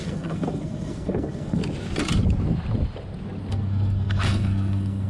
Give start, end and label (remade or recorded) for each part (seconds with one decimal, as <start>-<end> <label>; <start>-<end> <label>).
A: 0.0-1.6 remade; 1.6-3.5 recorded; 3.5-5.1 remade